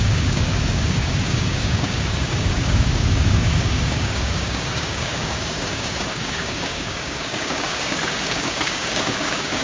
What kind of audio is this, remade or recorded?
remade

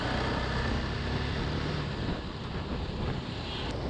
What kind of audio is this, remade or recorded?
recorded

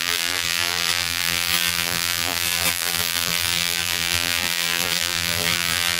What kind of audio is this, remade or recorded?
remade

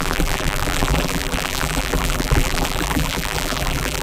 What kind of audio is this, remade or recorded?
remade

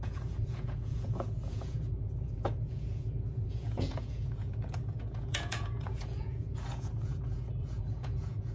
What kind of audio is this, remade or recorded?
remade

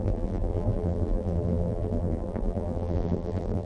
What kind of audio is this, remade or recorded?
remade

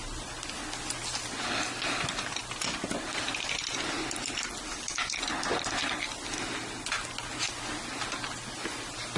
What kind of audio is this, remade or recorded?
recorded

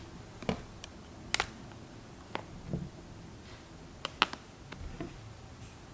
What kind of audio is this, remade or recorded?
recorded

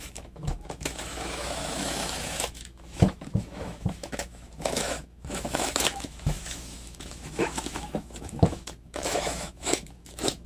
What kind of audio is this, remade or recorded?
remade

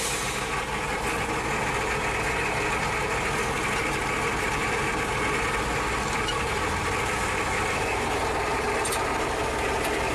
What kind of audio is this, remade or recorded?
recorded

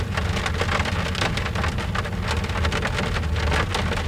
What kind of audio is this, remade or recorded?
recorded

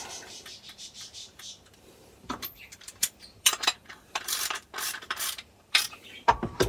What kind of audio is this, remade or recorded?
remade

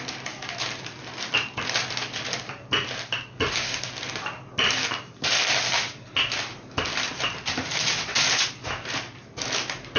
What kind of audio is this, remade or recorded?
recorded